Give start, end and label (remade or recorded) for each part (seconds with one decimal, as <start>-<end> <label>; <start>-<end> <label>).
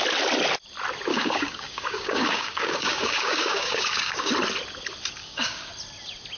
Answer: 0.0-1.1 recorded; 1.1-4.3 remade; 4.3-5.2 recorded; 5.2-5.7 remade; 5.7-6.4 recorded